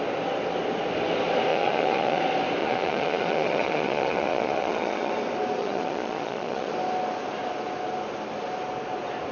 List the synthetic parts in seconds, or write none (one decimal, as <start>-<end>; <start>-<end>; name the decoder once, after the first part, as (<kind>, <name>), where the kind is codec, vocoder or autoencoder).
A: 1.5-2.2 (vocoder, Vocos); 2.6-5.1; 5.6-6.7